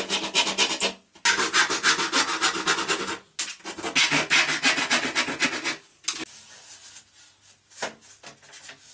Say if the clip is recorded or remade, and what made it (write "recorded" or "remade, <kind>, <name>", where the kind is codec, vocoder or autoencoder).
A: recorded